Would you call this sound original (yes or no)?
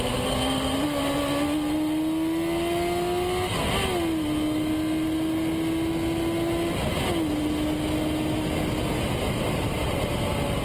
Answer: yes